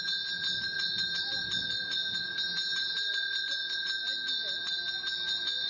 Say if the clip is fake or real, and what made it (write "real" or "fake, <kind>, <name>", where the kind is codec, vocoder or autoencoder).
real